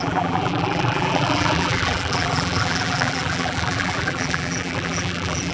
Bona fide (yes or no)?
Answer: no